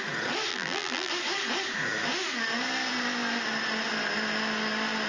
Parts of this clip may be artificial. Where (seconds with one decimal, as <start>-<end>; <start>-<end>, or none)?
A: 0.5-1.1

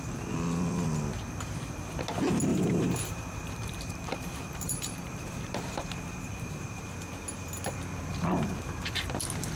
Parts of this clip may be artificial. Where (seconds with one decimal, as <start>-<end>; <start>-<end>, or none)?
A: 2.5-7.0

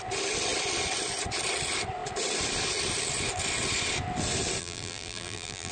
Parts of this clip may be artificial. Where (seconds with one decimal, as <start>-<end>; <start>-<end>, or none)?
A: 4.6-5.7

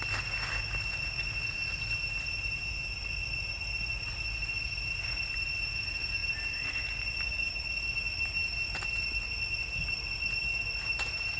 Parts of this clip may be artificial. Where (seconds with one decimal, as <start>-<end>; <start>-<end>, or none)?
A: none

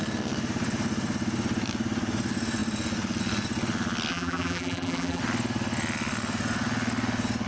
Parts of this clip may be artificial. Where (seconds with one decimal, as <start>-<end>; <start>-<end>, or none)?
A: 4.1-5.2